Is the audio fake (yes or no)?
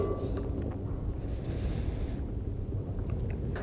no